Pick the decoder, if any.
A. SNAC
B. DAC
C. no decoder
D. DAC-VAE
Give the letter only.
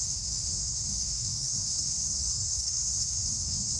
A